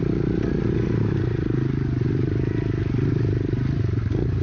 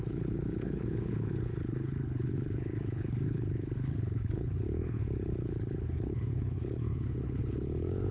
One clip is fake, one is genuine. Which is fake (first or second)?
second